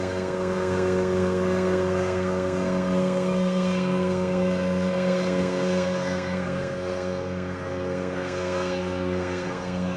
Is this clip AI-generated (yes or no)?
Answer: yes